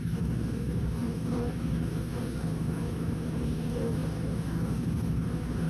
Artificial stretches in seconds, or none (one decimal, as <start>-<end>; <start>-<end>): 0.0-5.7